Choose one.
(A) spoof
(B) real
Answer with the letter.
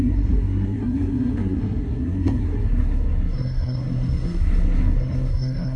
A